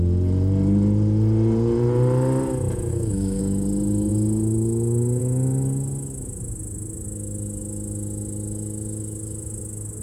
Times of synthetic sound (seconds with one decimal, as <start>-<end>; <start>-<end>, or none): 2.9-3.4